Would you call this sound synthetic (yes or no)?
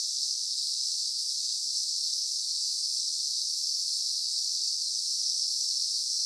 yes